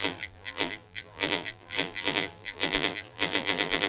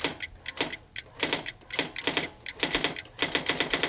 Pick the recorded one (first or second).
second